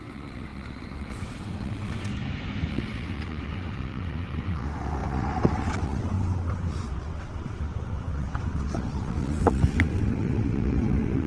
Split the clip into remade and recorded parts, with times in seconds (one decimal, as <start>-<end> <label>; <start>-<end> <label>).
0.0-2.1 remade; 2.1-2.7 recorded; 2.7-11.3 remade